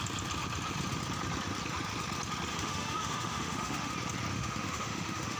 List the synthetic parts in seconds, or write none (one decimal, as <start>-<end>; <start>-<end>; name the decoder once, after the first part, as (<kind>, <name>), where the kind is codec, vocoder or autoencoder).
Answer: 2.5-3.9 (autoencoder, DAC-VAE); 4.3-5.4